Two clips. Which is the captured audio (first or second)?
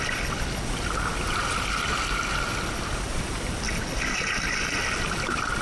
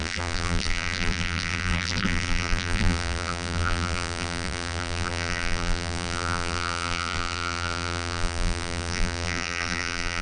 first